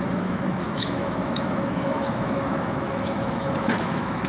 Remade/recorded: remade